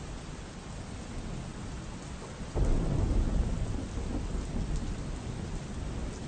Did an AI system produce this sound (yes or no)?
no